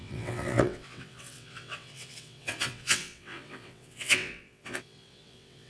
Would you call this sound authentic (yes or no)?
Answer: no